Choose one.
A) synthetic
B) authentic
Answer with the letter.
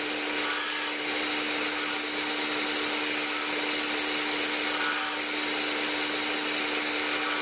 B